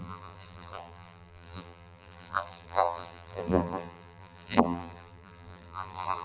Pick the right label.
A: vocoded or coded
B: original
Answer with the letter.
A